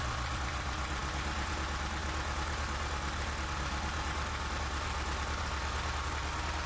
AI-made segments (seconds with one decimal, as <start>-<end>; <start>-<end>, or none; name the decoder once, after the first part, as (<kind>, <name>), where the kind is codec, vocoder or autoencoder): none

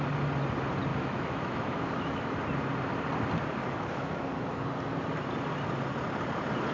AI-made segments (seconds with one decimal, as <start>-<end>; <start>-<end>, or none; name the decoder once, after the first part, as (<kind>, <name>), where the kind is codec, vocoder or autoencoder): 0.9-2.4 (autoencoder, DAC-VAE); 3.6-4.2